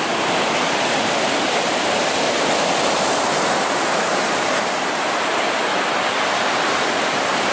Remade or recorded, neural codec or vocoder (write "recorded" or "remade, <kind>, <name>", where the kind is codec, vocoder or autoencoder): remade, vocoder, BigVGAN v2